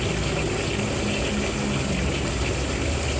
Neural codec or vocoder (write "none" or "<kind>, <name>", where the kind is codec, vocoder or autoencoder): none